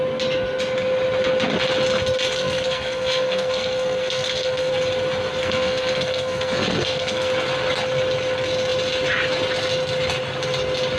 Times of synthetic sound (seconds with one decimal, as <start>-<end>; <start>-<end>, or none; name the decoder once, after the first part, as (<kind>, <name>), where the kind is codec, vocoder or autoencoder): 2.3-4.7 (codec, SNAC); 5.4-7.3